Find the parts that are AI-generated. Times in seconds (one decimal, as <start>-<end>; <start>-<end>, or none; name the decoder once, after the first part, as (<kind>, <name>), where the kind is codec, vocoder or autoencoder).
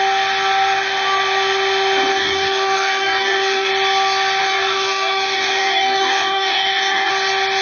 2.1-3.7 (codec, DAC); 4.4-7.1